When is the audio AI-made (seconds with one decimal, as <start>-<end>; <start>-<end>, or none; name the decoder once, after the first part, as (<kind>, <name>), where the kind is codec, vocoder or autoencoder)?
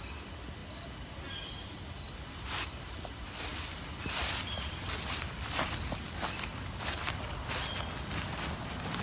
none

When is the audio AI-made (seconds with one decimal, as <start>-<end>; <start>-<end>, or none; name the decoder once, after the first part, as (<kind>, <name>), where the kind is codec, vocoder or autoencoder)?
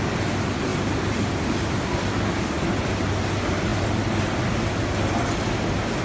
none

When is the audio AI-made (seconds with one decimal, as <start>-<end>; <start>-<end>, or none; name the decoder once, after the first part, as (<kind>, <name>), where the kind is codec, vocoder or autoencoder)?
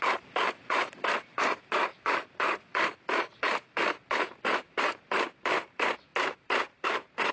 0.0-7.3 (vocoder, BigVGAN v2)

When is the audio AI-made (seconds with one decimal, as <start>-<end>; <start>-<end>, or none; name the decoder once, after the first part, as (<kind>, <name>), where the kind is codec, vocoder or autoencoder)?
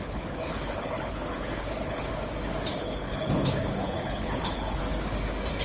0.0-2.0 (codec, HILCodec); 2.8-4.8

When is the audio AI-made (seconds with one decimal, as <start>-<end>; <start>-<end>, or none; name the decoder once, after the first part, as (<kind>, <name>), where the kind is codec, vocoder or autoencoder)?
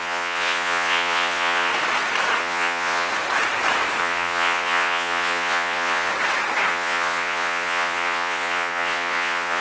0.0-1.7 (vocoder, Vocos); 2.4-3.1; 4.0-6.1; 6.7-9.6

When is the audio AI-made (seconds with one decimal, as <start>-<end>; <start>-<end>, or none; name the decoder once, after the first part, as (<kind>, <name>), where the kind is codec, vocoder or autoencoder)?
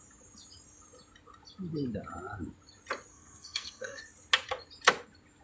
3.1-4.0 (codec, SNAC)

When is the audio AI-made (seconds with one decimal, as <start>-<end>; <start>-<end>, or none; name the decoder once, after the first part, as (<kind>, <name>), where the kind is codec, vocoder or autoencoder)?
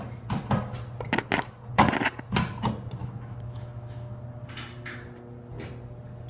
3.0-4.2 (autoencoder, DAC-VAE)